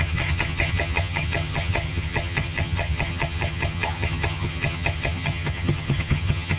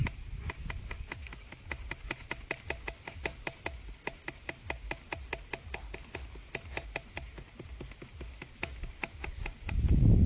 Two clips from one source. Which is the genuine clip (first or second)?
second